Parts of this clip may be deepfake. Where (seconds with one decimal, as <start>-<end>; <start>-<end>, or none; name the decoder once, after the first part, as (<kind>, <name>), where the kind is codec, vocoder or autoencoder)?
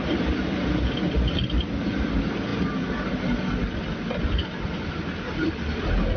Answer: none